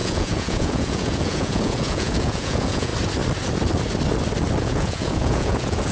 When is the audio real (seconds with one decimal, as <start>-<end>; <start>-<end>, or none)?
2.9-4.6